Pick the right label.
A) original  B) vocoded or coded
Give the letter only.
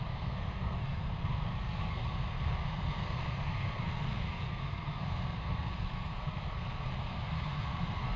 B